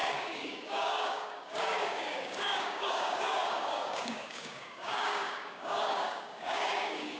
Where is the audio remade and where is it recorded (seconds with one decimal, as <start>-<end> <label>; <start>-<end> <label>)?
0.0-7.2 remade